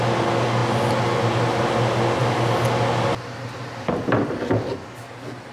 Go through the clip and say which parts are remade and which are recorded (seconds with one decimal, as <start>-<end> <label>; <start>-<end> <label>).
0.0-5.5 recorded